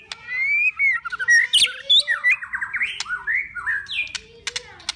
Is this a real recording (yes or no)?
yes